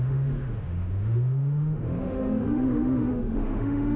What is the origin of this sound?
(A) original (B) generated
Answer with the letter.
B